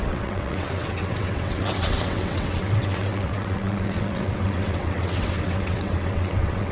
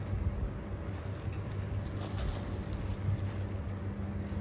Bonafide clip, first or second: second